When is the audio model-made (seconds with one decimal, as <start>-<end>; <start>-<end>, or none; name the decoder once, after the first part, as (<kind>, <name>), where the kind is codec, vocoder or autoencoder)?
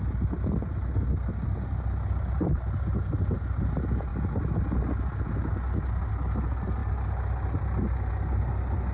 none